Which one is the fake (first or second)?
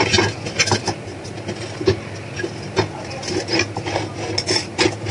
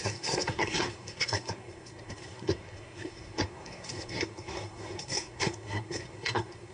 second